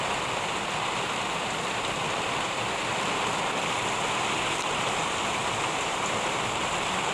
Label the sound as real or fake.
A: real